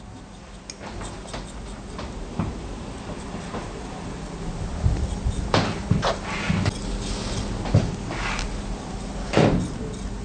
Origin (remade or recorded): recorded